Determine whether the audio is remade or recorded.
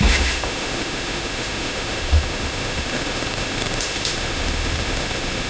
remade